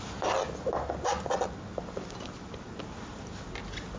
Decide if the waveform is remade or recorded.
recorded